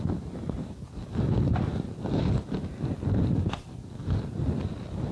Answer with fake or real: real